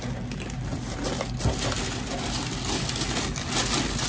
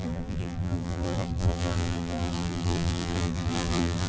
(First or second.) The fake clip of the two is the second